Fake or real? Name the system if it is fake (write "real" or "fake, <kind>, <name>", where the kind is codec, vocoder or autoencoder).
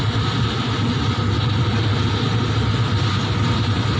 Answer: real